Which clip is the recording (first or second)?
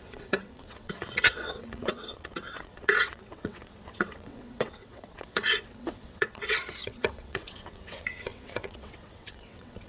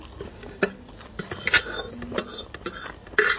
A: second